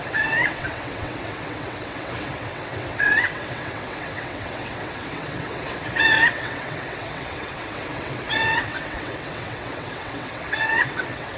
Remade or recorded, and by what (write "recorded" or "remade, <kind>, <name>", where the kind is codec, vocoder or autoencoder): remade, vocoder, WaveNeXt